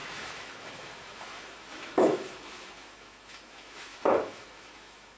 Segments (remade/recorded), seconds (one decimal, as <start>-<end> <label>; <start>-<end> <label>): 0.0-5.2 remade